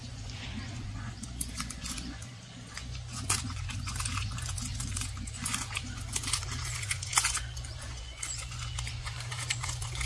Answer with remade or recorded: remade